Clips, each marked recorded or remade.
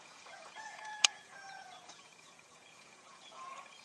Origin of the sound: remade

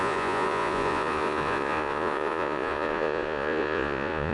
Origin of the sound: remade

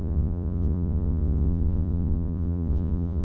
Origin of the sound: remade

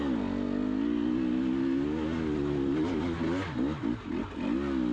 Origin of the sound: recorded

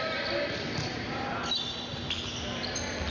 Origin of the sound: recorded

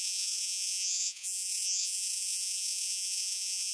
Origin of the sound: remade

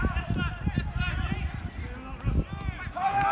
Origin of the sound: recorded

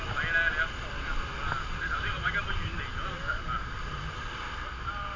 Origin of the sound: recorded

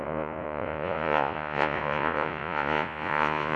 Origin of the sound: remade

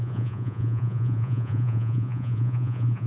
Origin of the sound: remade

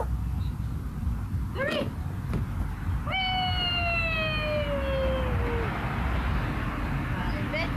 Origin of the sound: recorded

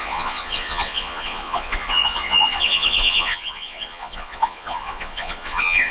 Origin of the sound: remade